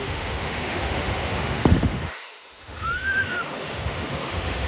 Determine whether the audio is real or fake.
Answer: fake